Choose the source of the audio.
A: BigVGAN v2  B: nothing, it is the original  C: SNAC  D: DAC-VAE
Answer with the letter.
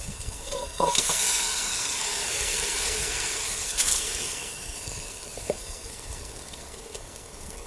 C